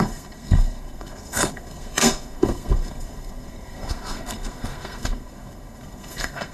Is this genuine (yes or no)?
no